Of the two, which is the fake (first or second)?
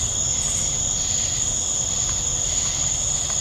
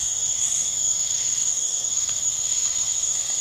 second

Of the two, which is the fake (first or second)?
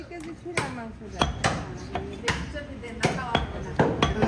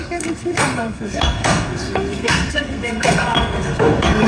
second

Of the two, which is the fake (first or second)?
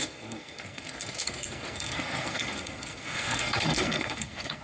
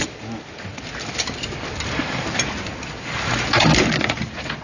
first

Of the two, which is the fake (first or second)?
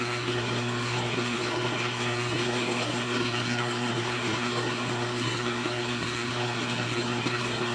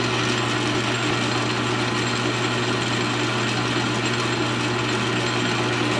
first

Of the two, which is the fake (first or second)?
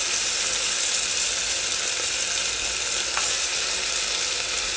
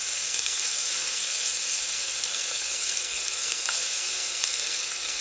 second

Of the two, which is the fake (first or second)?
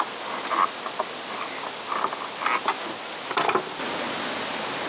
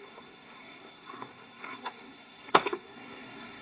second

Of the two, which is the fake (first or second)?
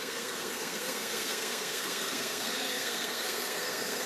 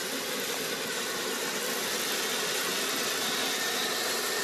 first